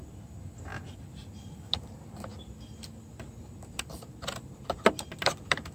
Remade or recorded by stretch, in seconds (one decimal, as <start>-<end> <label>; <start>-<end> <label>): 0.0-0.7 remade; 0.7-1.4 recorded; 1.4-2.3 remade; 2.3-3.4 recorded; 3.4-5.7 remade